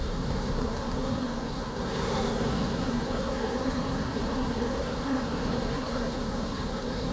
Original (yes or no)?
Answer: no